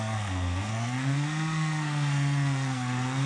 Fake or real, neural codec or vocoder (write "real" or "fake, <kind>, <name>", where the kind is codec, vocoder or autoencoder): fake, codec, SNAC